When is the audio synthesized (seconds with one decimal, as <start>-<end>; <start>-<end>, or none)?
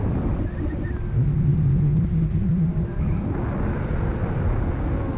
none